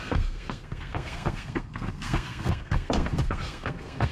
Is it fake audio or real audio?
fake